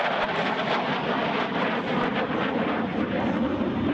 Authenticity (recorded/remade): recorded